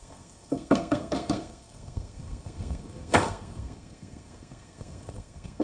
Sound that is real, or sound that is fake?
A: fake